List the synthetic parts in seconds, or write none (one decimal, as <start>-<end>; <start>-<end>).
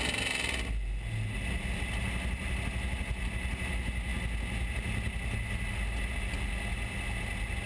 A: none